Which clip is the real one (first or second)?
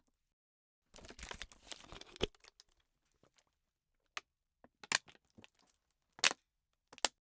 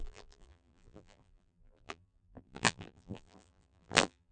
first